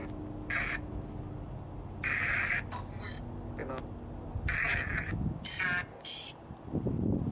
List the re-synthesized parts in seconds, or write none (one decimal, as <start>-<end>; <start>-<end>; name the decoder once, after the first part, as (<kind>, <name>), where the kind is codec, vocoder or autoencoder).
none